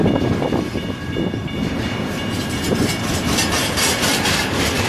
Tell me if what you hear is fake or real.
fake